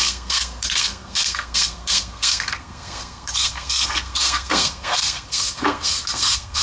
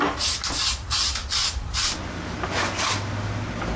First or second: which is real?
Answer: second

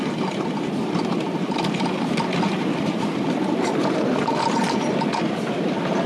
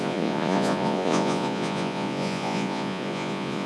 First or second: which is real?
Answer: first